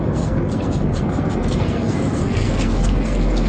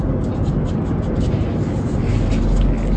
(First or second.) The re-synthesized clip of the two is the first